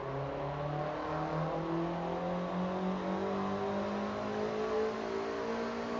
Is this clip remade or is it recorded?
recorded